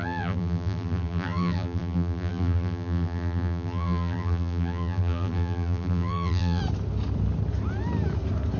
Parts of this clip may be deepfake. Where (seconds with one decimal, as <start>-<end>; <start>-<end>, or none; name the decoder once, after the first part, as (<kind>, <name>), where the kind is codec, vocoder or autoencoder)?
0.0-6.6 (vocoder, BigVGAN v2)